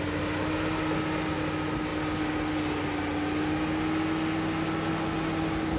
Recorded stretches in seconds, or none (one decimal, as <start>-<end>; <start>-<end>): 0.0-5.8